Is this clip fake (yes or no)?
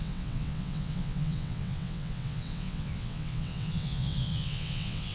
yes